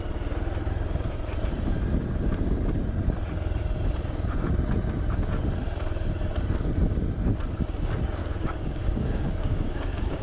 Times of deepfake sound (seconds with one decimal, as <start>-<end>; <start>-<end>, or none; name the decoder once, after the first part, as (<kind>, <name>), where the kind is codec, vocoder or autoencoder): 8.2-10.2 (codec, DAC)